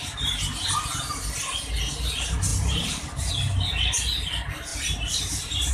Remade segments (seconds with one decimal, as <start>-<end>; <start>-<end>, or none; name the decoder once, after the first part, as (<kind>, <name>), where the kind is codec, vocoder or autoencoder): 2.5-3.3 (vocoder, BigVGAN v2); 4.7-5.7